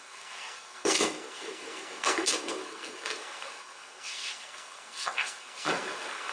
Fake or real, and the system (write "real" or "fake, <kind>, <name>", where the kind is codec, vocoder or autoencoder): fake, codec, SNAC